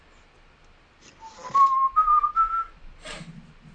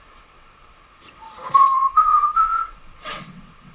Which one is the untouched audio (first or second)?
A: first